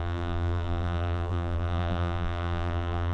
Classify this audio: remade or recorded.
remade